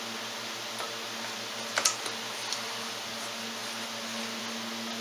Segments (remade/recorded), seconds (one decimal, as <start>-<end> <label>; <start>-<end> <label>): 0.0-5.0 recorded